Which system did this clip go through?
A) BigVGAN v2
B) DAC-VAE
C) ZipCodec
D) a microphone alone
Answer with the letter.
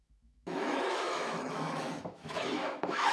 B